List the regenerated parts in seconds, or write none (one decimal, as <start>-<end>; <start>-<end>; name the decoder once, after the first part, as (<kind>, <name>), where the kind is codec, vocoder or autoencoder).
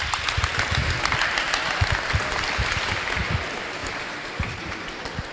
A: none